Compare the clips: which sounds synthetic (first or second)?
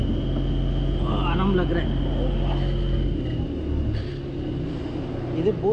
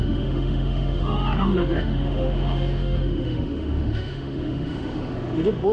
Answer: second